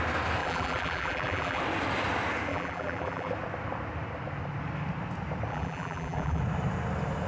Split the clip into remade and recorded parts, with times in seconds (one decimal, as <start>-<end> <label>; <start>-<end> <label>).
0.0-0.4 recorded; 0.4-1.6 remade; 1.6-2.5 recorded; 2.5-3.3 remade; 3.3-5.5 recorded; 5.5-6.4 remade; 6.4-7.3 recorded